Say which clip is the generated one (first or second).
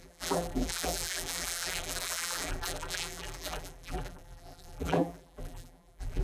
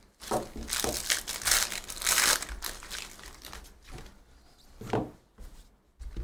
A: first